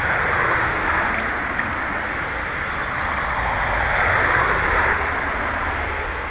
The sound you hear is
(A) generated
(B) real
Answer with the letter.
B